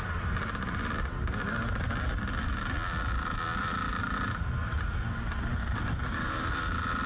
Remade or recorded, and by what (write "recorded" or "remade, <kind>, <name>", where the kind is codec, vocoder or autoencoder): recorded